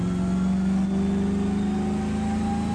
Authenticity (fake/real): real